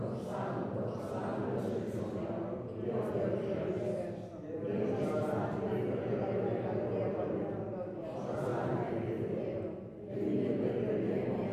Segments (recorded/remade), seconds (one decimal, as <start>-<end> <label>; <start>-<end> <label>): 0.0-1.3 recorded; 1.3-5.2 remade; 5.2-8.5 recorded; 8.5-10.7 remade; 10.7-11.5 recorded